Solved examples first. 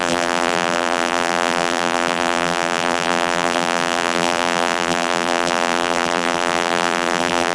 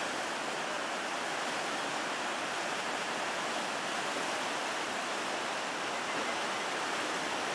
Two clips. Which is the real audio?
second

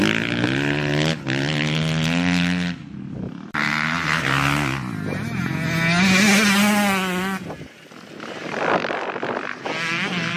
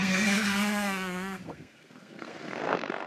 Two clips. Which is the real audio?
first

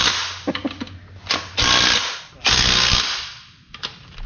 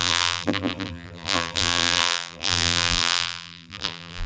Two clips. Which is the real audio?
first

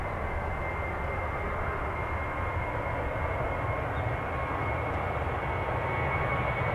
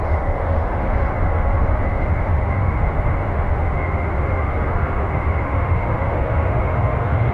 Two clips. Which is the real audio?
first